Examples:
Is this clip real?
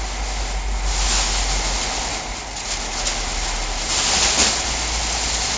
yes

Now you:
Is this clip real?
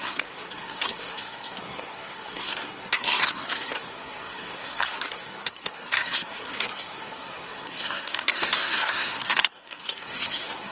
no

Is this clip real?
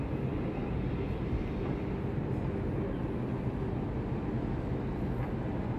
yes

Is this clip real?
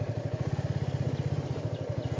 yes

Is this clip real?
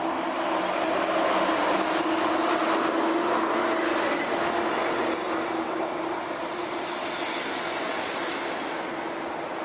yes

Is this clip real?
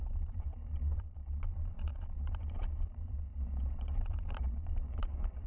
no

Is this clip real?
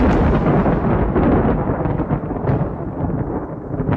yes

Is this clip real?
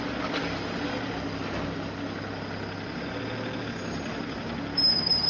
yes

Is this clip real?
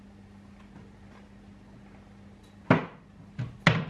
yes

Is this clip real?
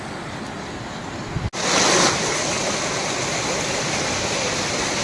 yes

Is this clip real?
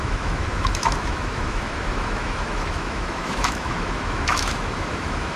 no